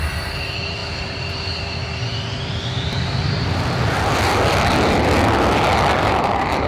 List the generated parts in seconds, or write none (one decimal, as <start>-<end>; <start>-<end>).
0.0-2.1; 6.0-6.7